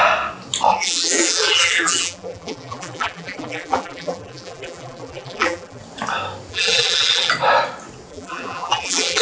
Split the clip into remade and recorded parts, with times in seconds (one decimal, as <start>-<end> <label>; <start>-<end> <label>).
0.0-0.7 recorded; 0.7-5.8 remade; 5.8-6.5 recorded; 6.5-7.3 remade; 7.3-8.1 recorded; 8.1-9.2 remade